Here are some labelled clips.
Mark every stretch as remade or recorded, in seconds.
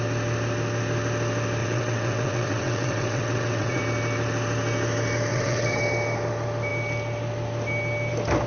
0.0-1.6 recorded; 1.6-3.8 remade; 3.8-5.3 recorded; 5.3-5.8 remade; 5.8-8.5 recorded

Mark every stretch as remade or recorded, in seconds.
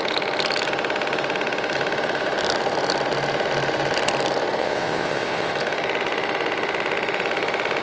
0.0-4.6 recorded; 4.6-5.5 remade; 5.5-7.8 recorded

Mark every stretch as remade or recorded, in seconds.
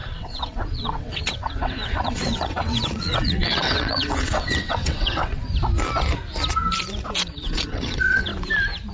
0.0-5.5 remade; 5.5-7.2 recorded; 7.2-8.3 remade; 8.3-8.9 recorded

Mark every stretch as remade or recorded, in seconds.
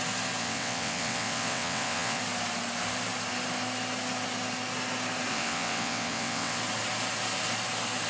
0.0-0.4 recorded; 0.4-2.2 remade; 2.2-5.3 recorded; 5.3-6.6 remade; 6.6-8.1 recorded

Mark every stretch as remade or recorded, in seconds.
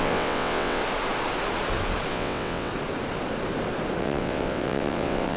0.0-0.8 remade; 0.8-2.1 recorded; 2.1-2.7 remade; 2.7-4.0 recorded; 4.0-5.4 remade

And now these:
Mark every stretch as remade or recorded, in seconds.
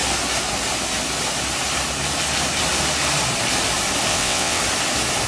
0.0-4.1 recorded; 4.1-4.6 remade; 4.6-5.3 recorded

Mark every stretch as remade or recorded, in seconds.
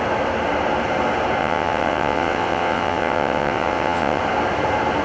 0.0-1.4 recorded; 1.4-4.2 remade; 4.2-5.0 recorded